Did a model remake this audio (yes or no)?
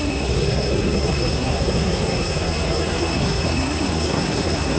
yes